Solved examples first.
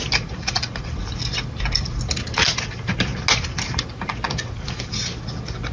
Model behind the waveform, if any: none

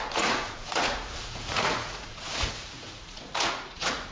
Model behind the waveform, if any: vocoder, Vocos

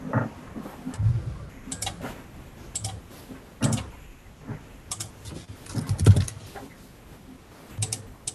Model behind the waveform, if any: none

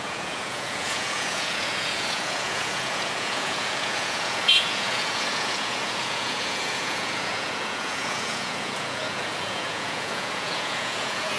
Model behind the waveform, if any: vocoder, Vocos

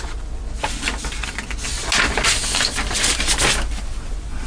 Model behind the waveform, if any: none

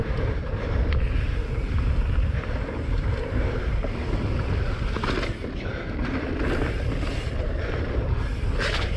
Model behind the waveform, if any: none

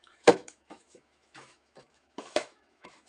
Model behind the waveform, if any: autoencoder, DAC-VAE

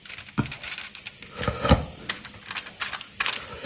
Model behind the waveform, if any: none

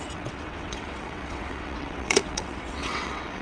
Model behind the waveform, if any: vocoder, WaveNeXt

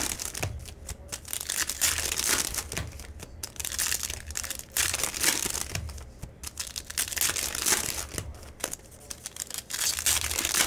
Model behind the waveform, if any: none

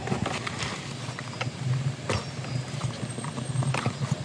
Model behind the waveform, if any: none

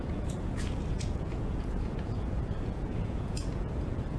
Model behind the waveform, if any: vocoder, Vocos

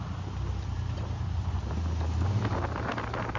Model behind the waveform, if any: none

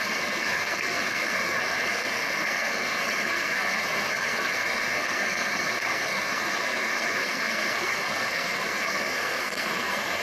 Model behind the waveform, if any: codec, SNAC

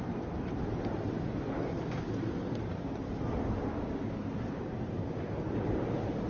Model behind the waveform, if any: vocoder, BigVGAN v2